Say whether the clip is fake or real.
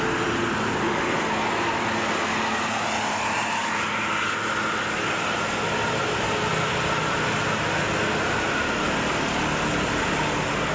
real